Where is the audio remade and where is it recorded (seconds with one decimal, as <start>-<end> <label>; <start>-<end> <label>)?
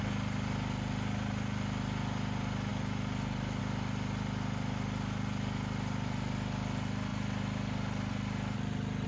0.0-9.1 recorded